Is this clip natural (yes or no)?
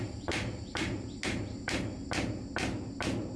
yes